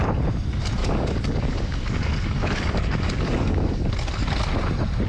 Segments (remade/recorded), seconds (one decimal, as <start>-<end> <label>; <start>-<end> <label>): 0.0-0.8 recorded; 0.8-3.9 remade; 3.9-5.1 recorded